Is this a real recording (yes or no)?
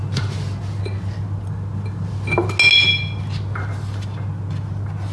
yes